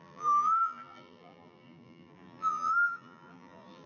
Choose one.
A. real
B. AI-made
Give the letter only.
B